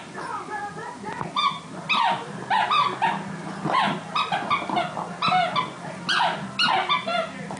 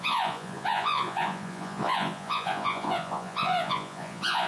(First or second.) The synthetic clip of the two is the second